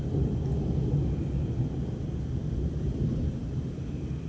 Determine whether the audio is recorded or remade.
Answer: recorded